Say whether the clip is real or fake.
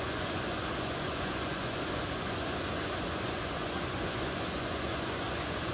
fake